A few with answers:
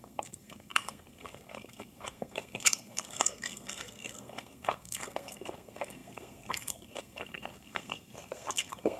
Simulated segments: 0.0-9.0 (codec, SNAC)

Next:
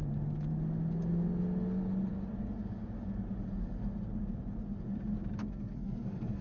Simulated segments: 5.4-6.4 (codec, SNAC)

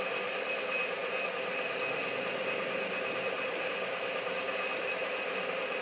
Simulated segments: none

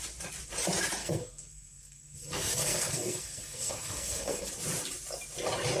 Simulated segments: 1.0-4.5 (codec, SNAC)

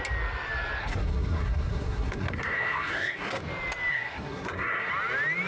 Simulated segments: 0.8-3.4 (codec, SNAC); 3.9-4.9

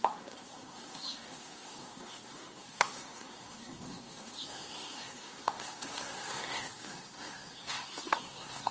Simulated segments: 0.0-8.7 (codec, SNAC)